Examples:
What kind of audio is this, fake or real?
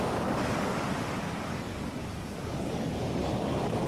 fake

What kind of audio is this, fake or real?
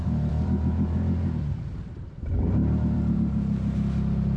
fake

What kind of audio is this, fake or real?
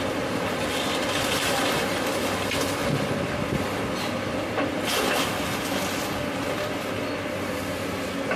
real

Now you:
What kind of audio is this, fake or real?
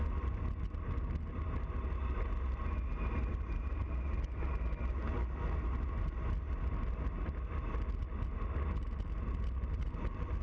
real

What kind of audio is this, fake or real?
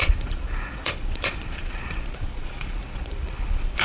fake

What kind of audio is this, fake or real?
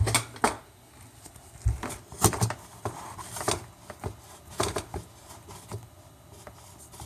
real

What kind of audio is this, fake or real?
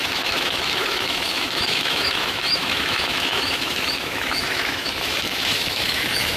fake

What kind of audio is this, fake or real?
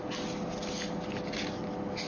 real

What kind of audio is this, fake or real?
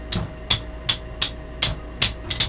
real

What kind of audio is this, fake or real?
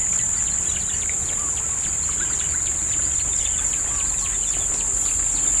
real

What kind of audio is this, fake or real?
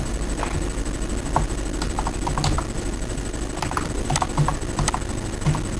real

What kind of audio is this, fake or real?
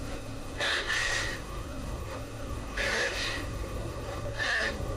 fake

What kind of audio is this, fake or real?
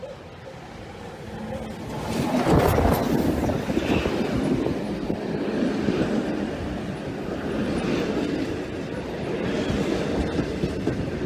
real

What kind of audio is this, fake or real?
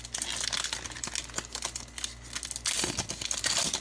real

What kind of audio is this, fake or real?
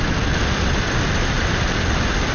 real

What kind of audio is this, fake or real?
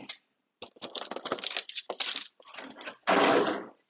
real